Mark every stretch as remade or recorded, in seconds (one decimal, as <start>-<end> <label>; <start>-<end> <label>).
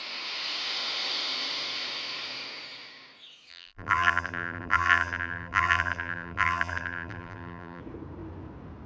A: 0.0-3.5 recorded; 3.5-7.8 remade; 7.8-8.9 recorded